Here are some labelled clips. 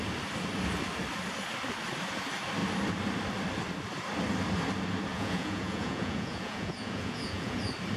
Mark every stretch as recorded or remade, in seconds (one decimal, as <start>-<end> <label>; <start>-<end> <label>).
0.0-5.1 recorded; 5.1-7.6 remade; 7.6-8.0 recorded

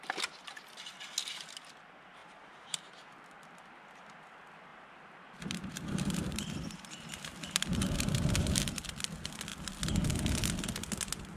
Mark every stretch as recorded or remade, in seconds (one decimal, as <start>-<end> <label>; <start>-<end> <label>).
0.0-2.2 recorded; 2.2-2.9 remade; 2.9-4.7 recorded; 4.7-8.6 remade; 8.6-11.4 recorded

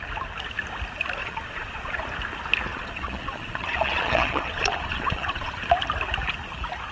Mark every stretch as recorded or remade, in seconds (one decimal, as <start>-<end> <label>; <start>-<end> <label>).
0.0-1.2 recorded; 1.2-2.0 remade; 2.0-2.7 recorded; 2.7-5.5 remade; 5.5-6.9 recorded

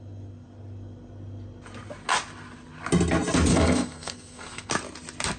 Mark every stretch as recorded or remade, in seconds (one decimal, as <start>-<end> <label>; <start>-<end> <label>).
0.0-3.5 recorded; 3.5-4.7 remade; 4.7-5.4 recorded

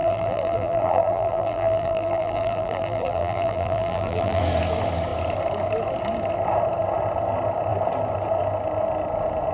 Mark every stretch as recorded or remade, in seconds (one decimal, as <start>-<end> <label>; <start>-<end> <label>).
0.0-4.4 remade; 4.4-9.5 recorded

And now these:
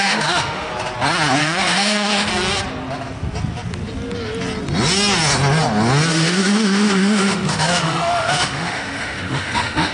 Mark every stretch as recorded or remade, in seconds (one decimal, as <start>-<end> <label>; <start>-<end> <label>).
0.0-0.7 remade; 0.7-1.4 recorded; 1.4-2.3 remade; 2.3-6.1 recorded; 6.1-9.9 remade

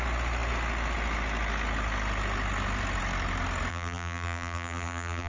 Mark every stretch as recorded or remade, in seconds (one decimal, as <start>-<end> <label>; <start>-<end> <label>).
0.0-3.7 recorded; 3.7-5.3 remade

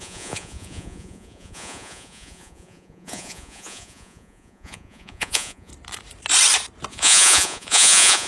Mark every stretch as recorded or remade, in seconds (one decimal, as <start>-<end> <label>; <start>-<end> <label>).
0.0-5.7 remade; 5.7-6.9 recorded; 6.9-8.3 remade